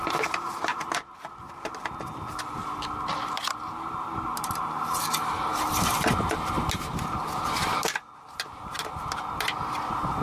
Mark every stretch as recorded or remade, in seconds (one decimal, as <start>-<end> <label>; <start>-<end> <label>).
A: 0.0-10.2 recorded

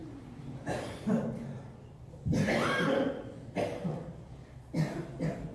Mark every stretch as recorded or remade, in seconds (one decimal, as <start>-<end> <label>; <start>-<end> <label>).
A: 0.0-3.3 remade; 3.3-5.5 recorded

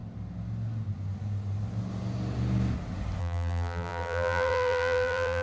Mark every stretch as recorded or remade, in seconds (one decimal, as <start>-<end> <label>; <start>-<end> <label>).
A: 0.0-3.2 recorded; 3.2-5.4 remade

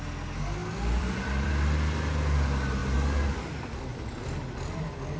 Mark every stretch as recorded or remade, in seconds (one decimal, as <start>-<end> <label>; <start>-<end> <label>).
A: 0.0-0.6 recorded; 0.6-1.5 remade; 1.5-3.9 recorded; 3.9-4.8 remade; 4.8-5.2 recorded

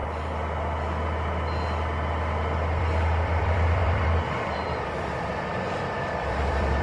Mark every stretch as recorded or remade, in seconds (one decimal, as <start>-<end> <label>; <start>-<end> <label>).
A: 0.0-2.8 recorded; 2.8-6.8 remade

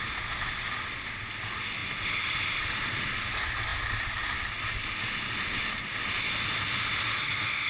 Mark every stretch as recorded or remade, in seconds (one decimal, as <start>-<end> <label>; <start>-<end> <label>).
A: 0.0-7.7 recorded

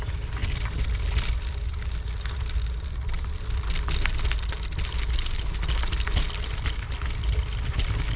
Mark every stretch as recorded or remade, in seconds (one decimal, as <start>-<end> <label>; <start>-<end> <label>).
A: 0.0-8.2 recorded

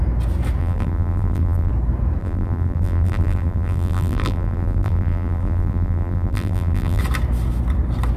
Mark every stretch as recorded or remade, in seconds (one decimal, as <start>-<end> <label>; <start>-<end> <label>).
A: 0.0-0.6 recorded; 0.6-1.7 remade; 1.7-2.2 recorded; 2.2-7.0 remade; 7.0-8.2 recorded